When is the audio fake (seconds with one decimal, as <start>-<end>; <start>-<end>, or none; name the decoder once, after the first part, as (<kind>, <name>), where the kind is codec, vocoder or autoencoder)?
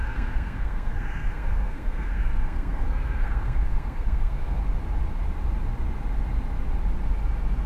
0.0-4.6 (codec, SNAC)